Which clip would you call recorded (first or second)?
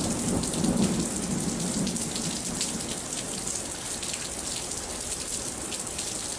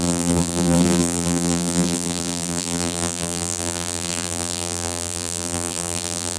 first